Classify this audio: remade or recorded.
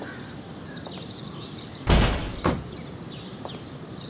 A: recorded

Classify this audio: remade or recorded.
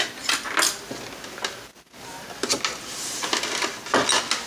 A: recorded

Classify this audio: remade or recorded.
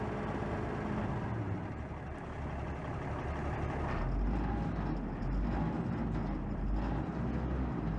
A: recorded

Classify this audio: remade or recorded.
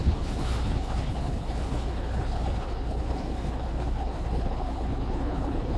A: remade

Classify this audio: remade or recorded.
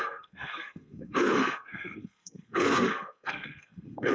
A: remade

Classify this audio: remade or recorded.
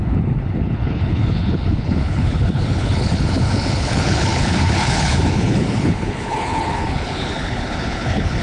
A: remade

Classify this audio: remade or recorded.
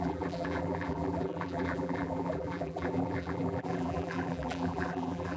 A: remade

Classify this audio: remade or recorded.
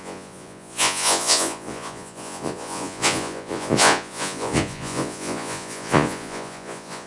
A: remade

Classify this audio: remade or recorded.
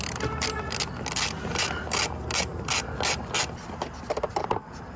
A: recorded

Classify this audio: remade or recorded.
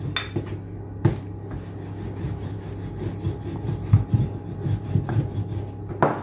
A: recorded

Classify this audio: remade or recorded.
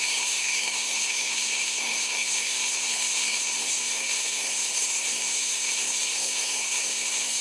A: remade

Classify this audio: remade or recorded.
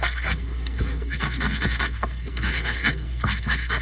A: remade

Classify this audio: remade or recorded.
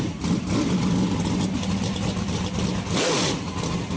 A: recorded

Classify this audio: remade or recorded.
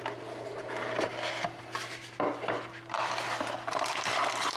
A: recorded